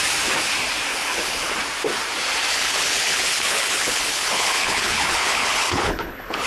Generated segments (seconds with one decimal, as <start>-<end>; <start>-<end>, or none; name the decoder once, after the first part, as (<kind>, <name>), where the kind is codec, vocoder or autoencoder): 0.9-1.5 (codec, HILCodec); 2.5-6.5